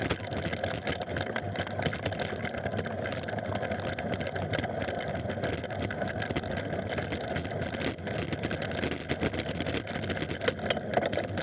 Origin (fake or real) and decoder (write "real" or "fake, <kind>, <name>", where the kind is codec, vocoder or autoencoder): real